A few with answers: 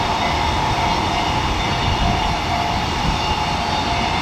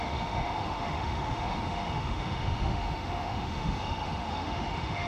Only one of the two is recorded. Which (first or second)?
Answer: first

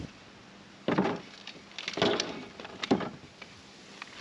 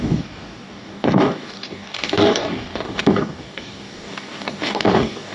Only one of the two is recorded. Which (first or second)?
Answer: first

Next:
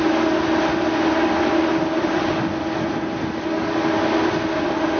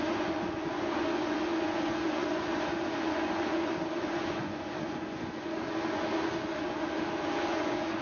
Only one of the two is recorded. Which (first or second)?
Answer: first